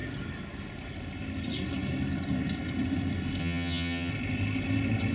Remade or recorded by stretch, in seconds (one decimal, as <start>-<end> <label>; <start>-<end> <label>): 0.0-3.4 recorded; 3.4-4.1 remade; 4.1-5.1 recorded